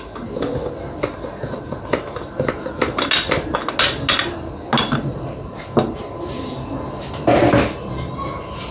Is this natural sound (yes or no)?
yes